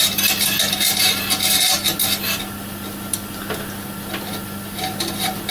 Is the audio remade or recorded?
recorded